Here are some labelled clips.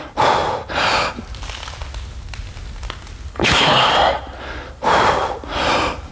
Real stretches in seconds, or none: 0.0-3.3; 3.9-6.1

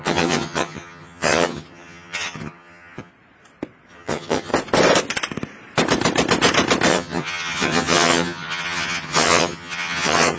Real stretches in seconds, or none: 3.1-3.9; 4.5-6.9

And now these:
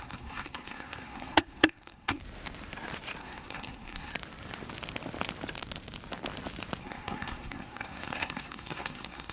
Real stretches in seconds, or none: 2.2-3.2; 4.1-6.8

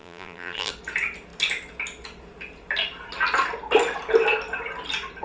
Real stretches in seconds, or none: 0.7-5.2

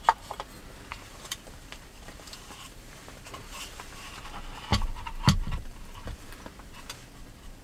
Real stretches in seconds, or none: 0.0-0.9; 4.2-4.7; 6.3-7.6